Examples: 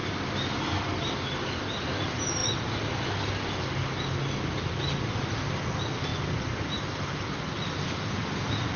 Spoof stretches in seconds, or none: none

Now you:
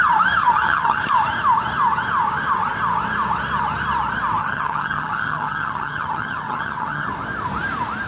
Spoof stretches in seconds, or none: 0.4-1.0; 4.4-7.1

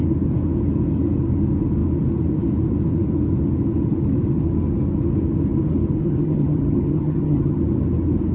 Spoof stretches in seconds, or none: 6.0-7.6

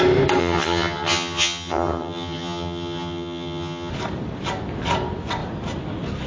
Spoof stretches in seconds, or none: 0.4-3.9

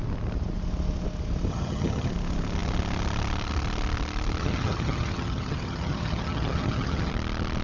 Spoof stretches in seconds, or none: 1.5-2.1; 4.4-7.1

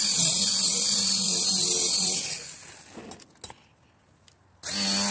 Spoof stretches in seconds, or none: none